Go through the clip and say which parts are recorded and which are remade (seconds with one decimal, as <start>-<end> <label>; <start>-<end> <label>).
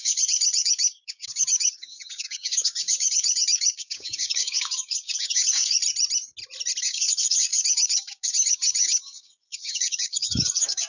0.0-5.8 remade; 5.8-6.8 recorded; 6.8-10.9 remade